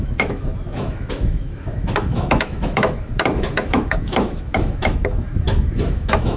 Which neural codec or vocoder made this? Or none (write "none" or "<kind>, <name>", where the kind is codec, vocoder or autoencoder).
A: autoencoder, DAC-VAE